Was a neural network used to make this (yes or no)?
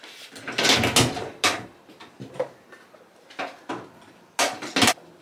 no